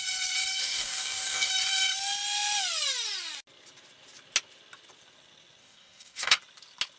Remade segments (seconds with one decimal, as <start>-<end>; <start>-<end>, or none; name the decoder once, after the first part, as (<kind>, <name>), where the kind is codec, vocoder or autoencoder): 0.6-1.5 (codec, DAC); 5.6-6.4